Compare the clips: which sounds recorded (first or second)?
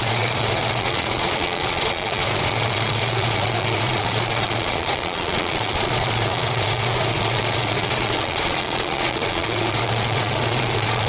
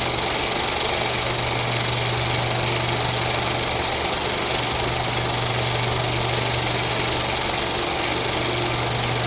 second